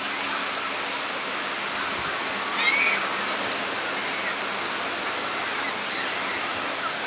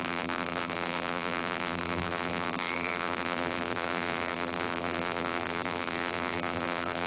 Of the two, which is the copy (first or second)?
second